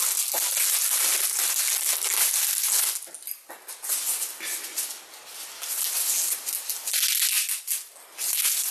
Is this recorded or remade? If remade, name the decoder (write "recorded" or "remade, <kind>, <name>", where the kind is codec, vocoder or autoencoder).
recorded